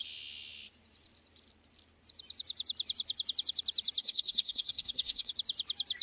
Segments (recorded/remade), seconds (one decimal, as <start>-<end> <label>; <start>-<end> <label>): 0.0-4.0 recorded; 4.0-5.3 remade; 5.3-6.0 recorded